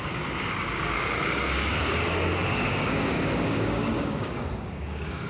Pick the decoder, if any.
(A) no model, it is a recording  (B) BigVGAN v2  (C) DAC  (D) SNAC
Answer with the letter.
C